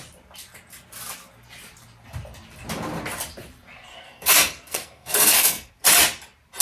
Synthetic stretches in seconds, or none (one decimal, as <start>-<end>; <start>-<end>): 3.9-5.7